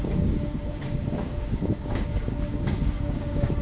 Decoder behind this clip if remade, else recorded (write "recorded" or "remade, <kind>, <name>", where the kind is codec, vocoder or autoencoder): remade, codec, DAC